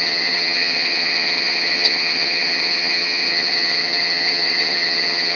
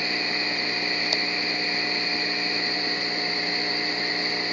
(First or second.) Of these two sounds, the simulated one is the first